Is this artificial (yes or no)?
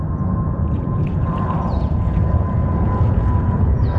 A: yes